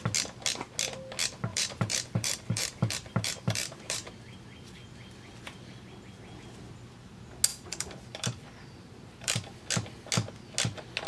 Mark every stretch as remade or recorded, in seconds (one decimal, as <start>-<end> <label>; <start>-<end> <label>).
0.0-1.5 recorded; 1.5-4.1 remade; 4.1-7.5 recorded; 7.5-9.6 remade; 9.6-11.1 recorded